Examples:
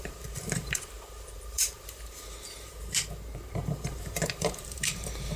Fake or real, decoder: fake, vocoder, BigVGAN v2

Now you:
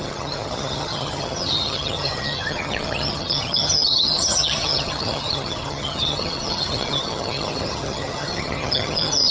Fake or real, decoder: fake, vocoder, HiFi-GAN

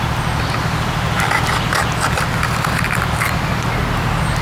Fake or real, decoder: real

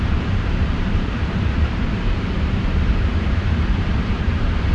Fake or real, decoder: fake, vocoder, BigVGAN v2